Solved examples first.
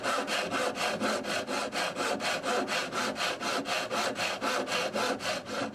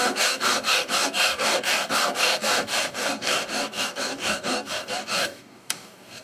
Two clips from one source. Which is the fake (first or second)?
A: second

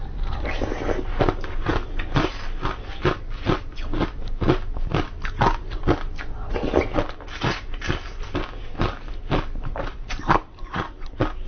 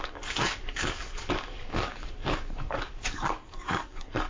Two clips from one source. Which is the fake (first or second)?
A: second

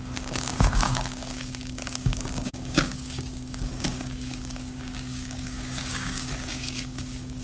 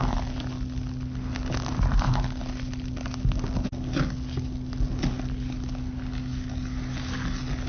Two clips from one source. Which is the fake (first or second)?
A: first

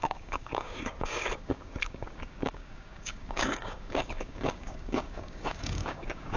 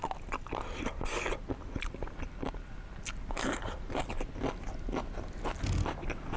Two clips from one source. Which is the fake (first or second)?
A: first